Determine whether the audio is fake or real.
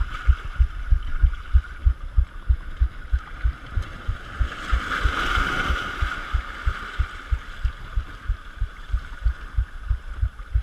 real